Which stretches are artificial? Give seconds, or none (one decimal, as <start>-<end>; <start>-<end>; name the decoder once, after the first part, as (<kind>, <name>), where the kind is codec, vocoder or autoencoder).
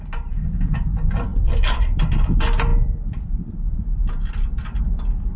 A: 1.3-1.9 (vocoder, BigVGAN v2)